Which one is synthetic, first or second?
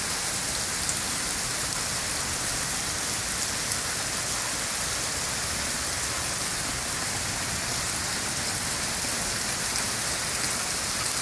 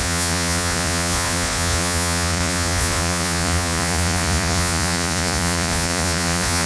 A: second